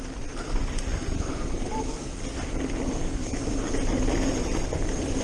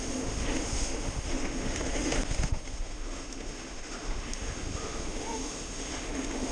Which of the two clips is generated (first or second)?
second